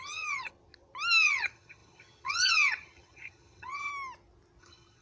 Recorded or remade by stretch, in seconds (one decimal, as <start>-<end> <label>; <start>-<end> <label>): 0.0-0.5 remade; 0.5-1.2 recorded; 1.2-3.9 remade; 3.9-4.6 recorded; 4.6-5.0 remade